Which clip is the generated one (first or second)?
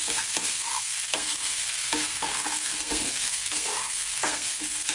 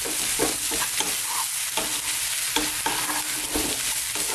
first